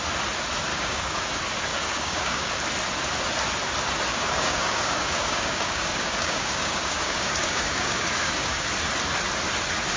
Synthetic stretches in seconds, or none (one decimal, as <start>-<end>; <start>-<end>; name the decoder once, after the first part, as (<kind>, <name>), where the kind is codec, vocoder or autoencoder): 0.7-1.2 (codec, DAC); 1.7-2.5; 4.1-8.7